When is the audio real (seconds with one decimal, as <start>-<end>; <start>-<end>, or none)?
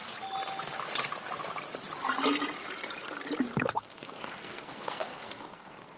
0.0-3.6